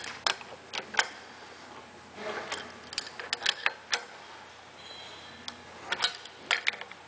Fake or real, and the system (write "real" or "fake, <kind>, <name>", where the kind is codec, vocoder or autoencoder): real